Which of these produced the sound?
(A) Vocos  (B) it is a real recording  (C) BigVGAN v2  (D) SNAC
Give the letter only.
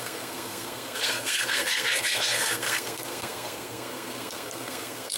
D